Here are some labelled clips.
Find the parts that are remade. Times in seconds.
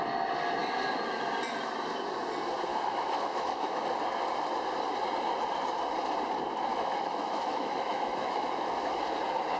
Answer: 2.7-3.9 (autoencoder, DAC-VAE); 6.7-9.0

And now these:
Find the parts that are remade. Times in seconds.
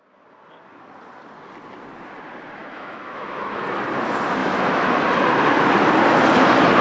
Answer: 2.6-3.6 (autoencoder, DAC-VAE); 4.4-5.0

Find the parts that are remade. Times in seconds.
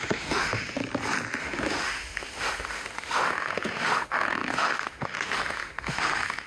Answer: 0.0-0.8 (autoencoder, DAC-VAE); 1.4-6.5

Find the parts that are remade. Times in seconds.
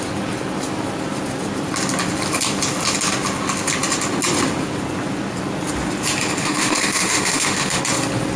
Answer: 6.4-7.8 (autoencoder, DAC-VAE)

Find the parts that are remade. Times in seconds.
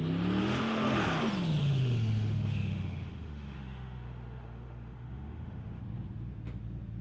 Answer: 0.4-1.0 (autoencoder, DAC-VAE); 1.6-5.8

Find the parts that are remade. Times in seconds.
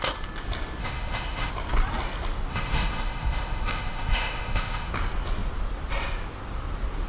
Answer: 0.8-1.5 (autoencoder, DAC-VAE); 2.5-4.9